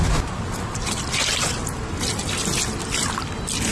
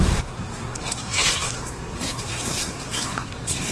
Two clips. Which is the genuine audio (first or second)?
first